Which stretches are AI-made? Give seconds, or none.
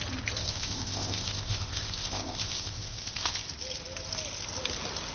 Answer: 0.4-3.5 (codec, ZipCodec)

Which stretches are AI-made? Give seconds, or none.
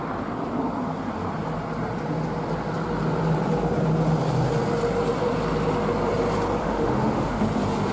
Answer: 6.6-7.4 (autoencoder, DAC-VAE)